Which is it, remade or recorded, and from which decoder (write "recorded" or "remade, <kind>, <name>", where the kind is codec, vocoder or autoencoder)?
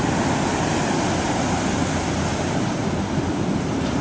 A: recorded